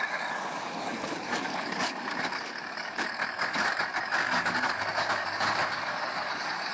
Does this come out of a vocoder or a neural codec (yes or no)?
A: yes